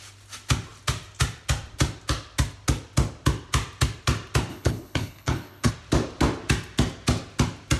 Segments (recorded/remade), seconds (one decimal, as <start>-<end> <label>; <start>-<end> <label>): 0.0-4.5 recorded; 4.5-5.7 remade; 5.7-7.8 recorded